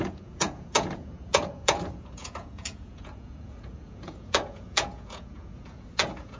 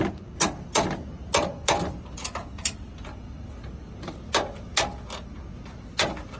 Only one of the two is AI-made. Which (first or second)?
first